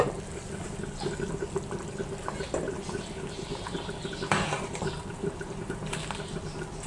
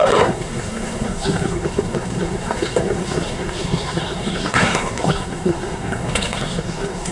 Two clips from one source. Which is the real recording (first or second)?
first